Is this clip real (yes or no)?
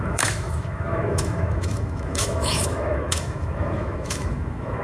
no